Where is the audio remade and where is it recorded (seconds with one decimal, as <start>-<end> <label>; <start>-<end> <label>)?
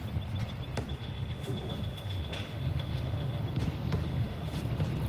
0.0-0.9 recorded; 0.9-3.4 remade; 3.4-4.0 recorded; 4.0-4.6 remade; 4.6-5.1 recorded